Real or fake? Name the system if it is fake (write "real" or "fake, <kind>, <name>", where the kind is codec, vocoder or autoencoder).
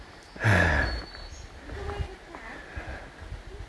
real